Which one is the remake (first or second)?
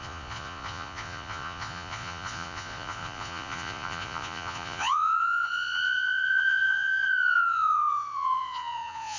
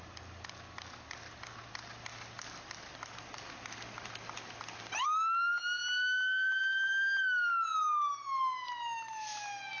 first